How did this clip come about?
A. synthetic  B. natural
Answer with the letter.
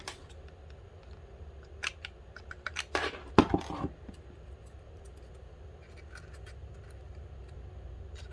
B